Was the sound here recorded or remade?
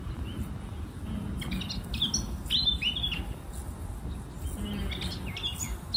recorded